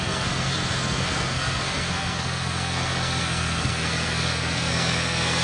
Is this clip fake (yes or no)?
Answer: yes